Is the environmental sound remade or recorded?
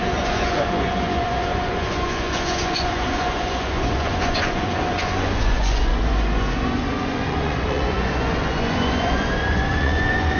remade